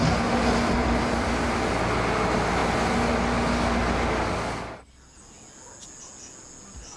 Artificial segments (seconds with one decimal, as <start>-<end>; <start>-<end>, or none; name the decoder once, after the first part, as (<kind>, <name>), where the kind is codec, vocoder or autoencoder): 0.8-1.7 (vocoder, BigVGAN v2)